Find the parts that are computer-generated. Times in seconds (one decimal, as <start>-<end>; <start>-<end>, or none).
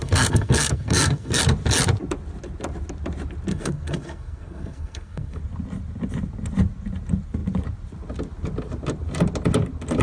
0.0-1.4; 3.5-5.4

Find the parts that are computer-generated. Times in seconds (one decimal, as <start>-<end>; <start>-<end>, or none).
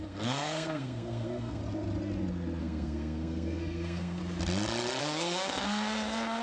0.0-1.6; 2.6-4.2; 5.0-6.4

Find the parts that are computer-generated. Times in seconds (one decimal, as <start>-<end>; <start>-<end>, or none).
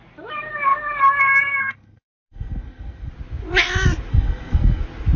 1.6-3.1; 4.1-4.8